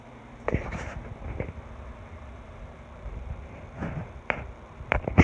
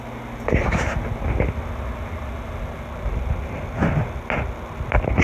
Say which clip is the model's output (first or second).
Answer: first